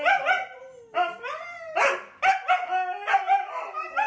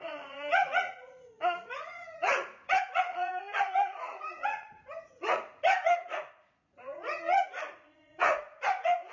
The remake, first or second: second